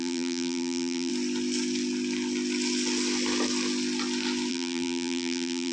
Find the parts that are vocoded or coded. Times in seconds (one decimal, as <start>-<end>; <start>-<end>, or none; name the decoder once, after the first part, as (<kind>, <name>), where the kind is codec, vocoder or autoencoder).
0.0-1.1 (vocoder, BigVGAN v2); 4.5-5.7